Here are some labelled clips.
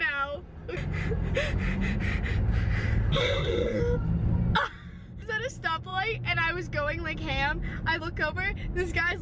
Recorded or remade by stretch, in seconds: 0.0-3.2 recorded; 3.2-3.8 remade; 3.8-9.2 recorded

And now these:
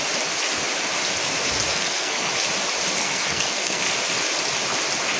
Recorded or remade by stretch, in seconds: 0.0-1.7 recorded; 1.7-2.3 remade; 2.3-3.0 recorded; 3.0-3.8 remade; 3.8-5.2 recorded

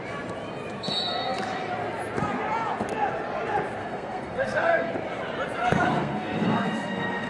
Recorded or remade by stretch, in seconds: 0.0-3.8 recorded; 3.8-4.9 remade; 4.9-5.6 recorded; 5.6-7.3 remade